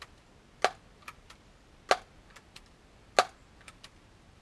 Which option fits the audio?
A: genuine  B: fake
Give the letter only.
A